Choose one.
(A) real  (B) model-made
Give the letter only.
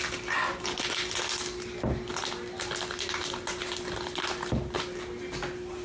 A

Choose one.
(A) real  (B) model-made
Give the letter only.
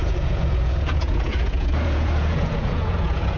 B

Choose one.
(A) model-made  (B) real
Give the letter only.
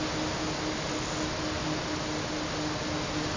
B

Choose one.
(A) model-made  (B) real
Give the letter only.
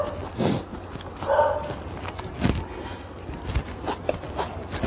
B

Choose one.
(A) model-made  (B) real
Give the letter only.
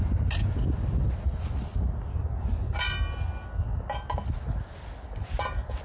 B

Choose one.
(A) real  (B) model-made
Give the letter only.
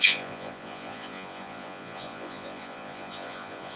B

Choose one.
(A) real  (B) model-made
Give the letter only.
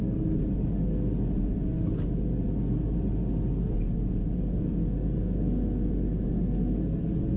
A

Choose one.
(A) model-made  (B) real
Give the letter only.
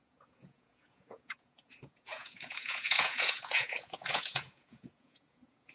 A